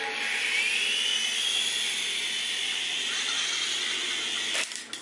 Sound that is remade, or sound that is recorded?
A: recorded